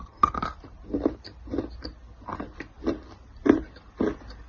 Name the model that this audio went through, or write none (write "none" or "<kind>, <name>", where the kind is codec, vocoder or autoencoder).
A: none